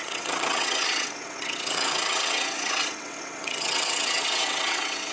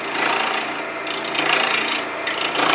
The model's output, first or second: first